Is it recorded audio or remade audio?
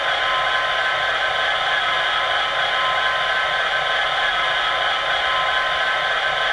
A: recorded